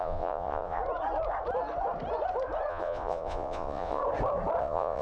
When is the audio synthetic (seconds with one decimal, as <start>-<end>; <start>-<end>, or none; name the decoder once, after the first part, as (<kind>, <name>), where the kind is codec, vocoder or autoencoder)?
0.0-0.8 (vocoder, Vocos); 2.7-4.0; 4.6-5.0